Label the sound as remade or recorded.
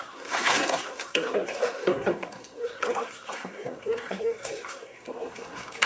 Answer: remade